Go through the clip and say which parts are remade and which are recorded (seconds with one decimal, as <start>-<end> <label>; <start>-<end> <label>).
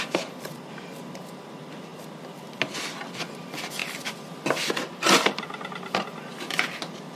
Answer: 0.0-3.8 remade; 3.8-5.3 recorded; 5.3-7.2 remade